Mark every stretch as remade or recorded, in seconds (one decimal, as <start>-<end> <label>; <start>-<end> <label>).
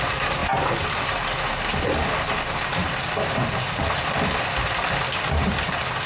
0.0-6.1 recorded